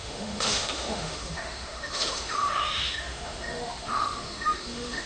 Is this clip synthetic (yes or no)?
yes